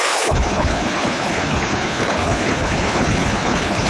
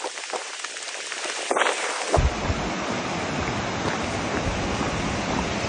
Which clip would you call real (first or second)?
second